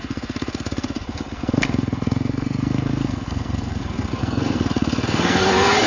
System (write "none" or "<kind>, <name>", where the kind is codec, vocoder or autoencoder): codec, SNAC